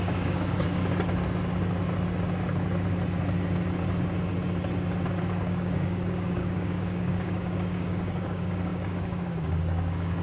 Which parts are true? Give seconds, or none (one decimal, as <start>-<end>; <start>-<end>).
0.8-5.2